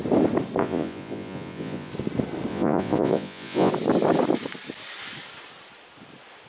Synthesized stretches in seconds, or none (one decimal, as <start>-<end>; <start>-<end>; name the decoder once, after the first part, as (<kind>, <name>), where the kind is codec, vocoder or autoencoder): 0.6-1.9 (vocoder, Vocos); 2.5-3.7